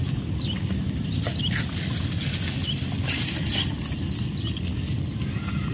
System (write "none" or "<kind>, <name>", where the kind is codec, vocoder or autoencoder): none